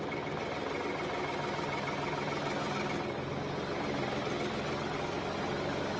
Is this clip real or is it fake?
real